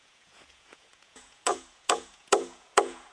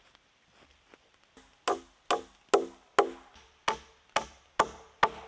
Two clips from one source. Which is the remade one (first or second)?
first